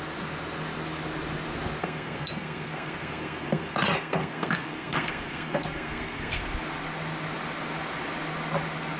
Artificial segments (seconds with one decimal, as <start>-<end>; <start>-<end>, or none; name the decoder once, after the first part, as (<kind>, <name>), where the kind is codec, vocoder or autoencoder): 1.8-6.4 (codec, SNAC)